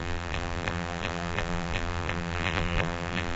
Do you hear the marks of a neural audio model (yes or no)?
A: yes